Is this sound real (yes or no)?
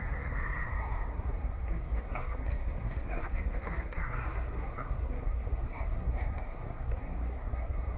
no